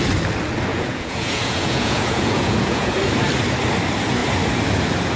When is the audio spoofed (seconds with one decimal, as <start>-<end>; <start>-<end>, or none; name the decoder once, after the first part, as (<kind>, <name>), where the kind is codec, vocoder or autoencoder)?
0.7-2.9 (vocoder, Vocos)